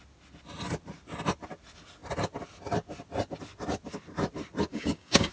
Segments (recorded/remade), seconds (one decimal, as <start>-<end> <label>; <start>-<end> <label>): 0.0-4.7 recorded; 4.7-5.3 remade